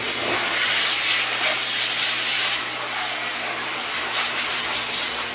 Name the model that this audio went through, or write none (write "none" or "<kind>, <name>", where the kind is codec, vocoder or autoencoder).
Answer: none